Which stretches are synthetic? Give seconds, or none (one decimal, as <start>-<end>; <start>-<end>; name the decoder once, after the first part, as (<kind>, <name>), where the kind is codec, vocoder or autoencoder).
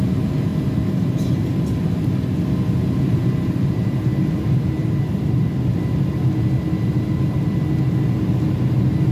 none